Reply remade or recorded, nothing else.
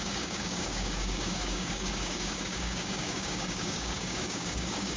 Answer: remade